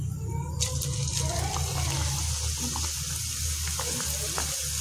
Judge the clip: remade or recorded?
recorded